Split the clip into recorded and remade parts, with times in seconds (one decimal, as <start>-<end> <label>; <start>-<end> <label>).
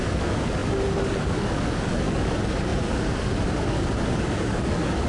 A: 0.0-5.1 remade